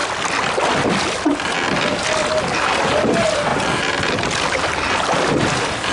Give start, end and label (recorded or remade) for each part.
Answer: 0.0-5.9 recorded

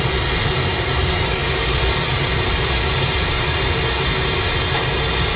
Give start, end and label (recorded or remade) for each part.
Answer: 0.0-5.4 recorded

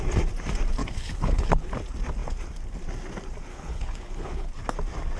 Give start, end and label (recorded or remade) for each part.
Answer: 0.0-0.8 recorded; 0.8-1.7 remade; 1.7-3.5 recorded; 3.5-4.5 remade; 4.5-5.2 recorded